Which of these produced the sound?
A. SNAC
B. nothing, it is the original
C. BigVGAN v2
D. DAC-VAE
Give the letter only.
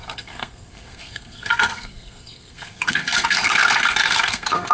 A